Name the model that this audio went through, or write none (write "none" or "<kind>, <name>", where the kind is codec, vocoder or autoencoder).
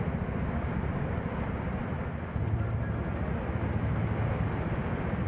none